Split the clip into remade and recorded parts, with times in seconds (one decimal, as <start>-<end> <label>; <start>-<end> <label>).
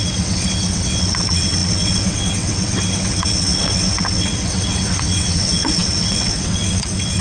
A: 0.0-7.2 remade